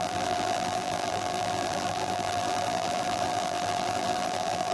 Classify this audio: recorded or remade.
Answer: remade